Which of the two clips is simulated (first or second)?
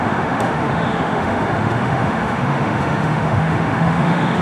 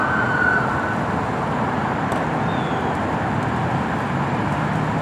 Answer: first